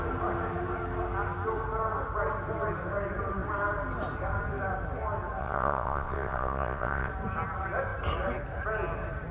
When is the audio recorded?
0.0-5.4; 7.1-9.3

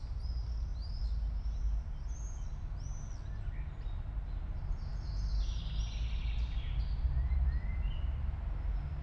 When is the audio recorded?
0.0-9.0